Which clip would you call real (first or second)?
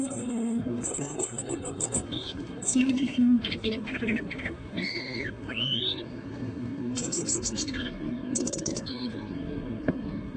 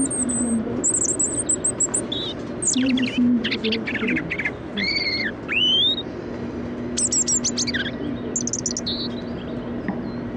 second